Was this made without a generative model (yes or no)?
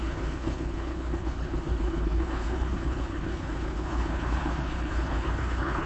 no